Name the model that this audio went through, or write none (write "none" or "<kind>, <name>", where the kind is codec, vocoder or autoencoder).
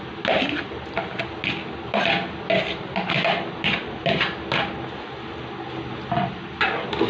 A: none